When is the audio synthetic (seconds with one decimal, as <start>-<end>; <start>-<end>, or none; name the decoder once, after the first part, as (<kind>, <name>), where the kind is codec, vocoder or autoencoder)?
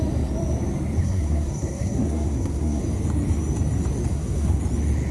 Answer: 1.0-2.8 (codec, SNAC); 4.1-4.6